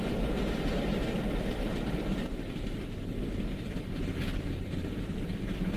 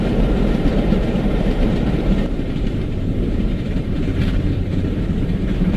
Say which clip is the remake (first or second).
second